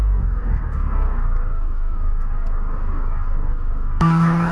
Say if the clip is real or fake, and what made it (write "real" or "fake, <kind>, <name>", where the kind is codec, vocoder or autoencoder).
fake, codec, DAC